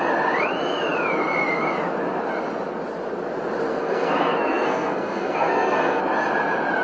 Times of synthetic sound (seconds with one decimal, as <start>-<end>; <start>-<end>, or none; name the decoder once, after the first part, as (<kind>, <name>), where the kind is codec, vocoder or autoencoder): 3.7-6.0 (codec, SNAC)